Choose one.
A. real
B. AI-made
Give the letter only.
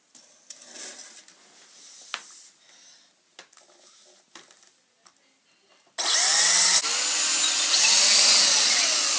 A